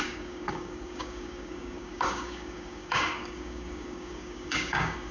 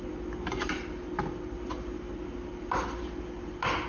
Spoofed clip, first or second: first